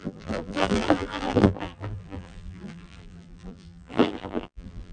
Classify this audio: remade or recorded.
remade